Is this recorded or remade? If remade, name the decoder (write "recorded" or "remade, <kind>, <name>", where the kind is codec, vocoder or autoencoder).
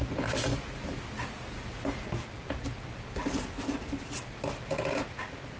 recorded